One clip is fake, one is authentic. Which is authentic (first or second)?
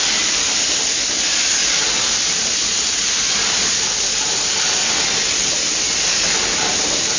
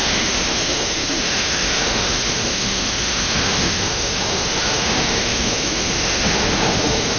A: first